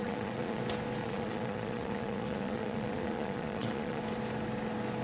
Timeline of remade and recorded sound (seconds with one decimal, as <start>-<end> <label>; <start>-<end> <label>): 0.0-0.6 remade; 0.6-1.0 recorded; 1.0-4.0 remade; 4.0-5.0 recorded